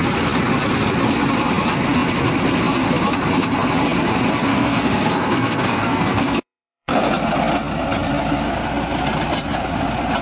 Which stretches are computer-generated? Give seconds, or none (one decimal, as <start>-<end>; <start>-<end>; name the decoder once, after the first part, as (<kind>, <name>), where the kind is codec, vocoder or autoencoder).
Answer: 4.5-7.1 (codec, SNAC)